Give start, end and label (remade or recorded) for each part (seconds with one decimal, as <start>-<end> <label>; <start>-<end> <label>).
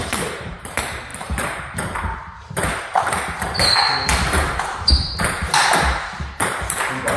0.0-7.2 remade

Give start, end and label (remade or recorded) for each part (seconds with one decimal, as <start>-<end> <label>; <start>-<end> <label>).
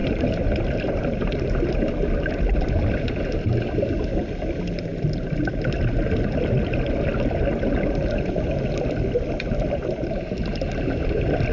0.0-1.9 remade; 1.9-11.5 recorded